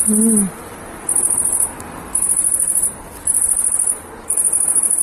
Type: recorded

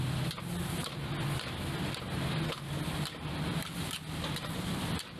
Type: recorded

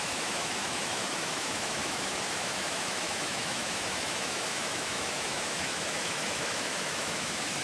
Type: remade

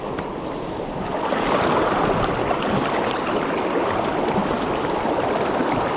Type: recorded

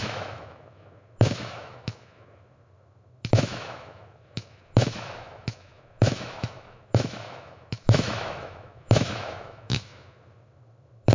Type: remade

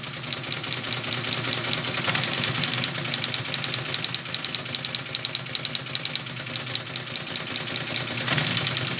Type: recorded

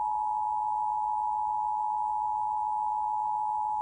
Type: recorded